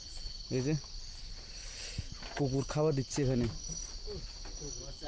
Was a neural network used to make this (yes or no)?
no